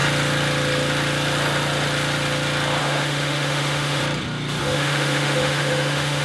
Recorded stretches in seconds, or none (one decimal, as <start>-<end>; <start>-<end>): 0.0-2.8; 4.0-4.6